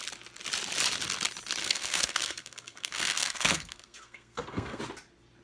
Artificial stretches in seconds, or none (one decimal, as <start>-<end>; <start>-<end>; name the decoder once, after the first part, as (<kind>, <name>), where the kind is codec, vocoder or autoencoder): 1.6-4.8 (codec, SNAC)